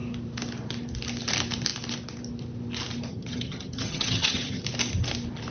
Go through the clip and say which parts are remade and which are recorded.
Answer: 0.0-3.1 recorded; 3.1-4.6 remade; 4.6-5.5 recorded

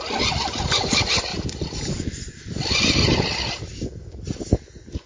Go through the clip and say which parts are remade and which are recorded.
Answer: 0.0-5.1 recorded

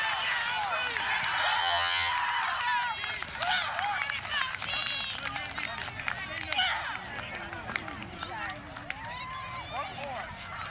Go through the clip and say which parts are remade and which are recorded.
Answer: 0.0-1.6 recorded; 1.6-2.1 remade; 2.1-10.7 recorded